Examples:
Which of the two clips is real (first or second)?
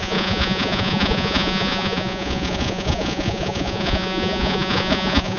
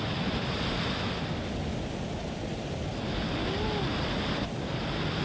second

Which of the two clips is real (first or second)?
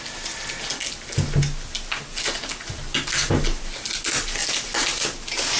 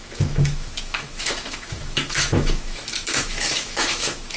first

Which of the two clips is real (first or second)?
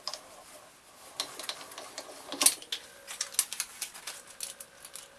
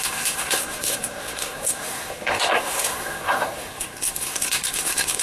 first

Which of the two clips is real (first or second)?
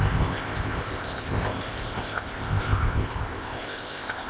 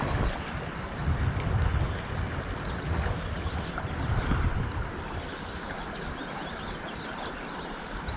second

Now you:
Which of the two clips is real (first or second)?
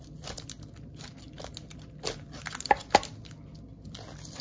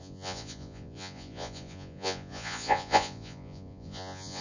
first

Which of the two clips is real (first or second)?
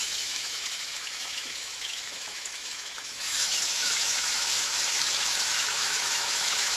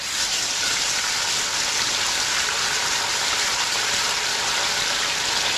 second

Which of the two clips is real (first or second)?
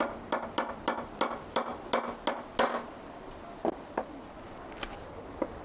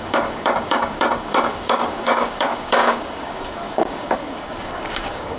first